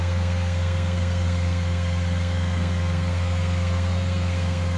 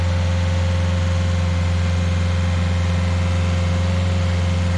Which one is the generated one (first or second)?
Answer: first